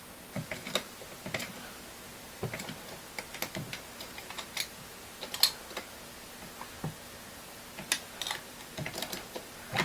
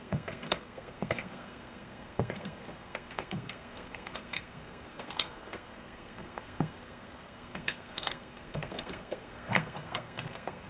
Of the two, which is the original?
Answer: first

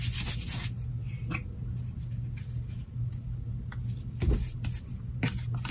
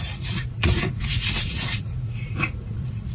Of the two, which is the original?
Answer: first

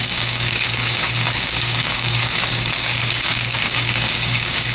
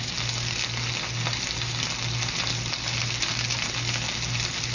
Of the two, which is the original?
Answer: second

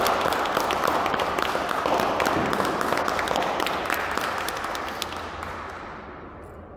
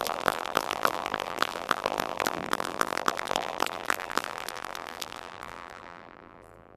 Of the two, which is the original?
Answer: first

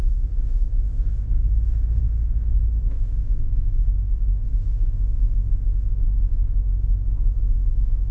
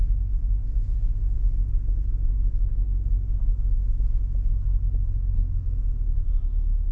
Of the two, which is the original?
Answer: second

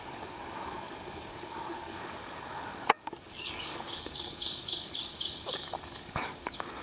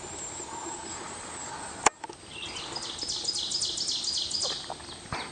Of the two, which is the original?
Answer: second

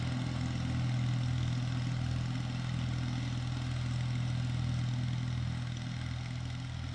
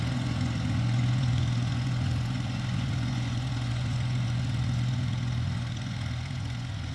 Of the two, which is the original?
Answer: first